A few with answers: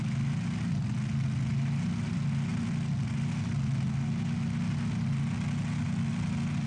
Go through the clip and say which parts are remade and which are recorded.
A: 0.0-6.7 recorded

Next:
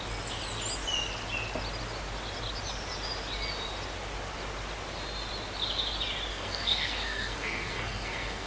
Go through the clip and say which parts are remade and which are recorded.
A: 0.0-6.3 recorded; 6.3-8.5 remade

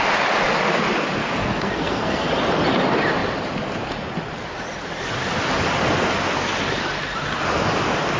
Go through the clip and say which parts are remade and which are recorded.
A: 0.0-1.2 recorded; 1.2-2.3 remade; 2.3-8.2 recorded

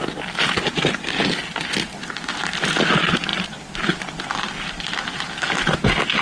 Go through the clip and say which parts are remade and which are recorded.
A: 0.0-6.2 recorded

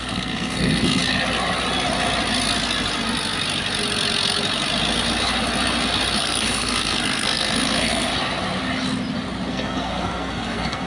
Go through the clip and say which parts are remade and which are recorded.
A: 0.0-1.0 remade; 1.0-6.2 recorded; 6.2-8.1 remade; 8.1-9.5 recorded; 9.5-10.9 remade